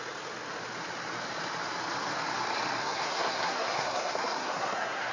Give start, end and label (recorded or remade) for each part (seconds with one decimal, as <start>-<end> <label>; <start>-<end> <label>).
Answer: 0.0-2.8 recorded; 2.8-5.1 remade